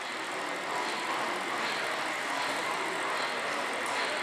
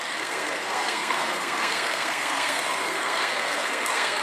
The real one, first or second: first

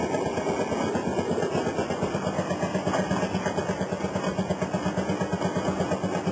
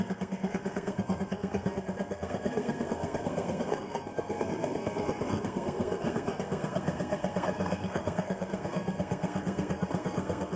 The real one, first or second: first